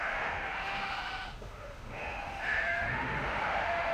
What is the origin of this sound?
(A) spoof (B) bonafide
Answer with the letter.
A